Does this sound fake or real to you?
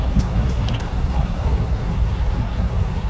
fake